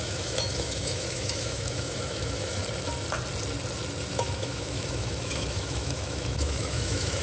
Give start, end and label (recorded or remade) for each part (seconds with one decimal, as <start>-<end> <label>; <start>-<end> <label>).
0.0-2.6 remade; 2.6-4.1 recorded; 4.1-7.2 remade